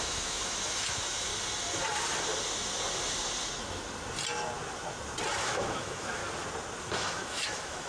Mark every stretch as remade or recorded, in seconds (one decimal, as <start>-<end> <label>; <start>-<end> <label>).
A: 0.0-1.3 remade; 1.3-5.4 recorded; 5.4-6.2 remade; 6.2-6.8 recorded; 6.8-7.9 remade